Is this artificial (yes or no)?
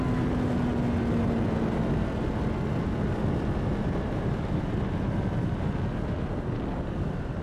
no